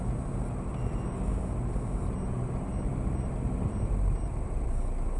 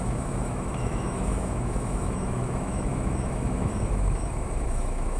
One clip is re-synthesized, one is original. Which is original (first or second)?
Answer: first